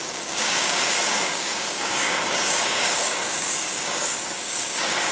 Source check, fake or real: fake